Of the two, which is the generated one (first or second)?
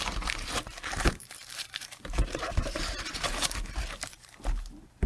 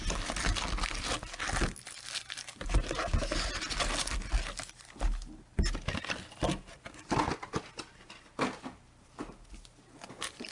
first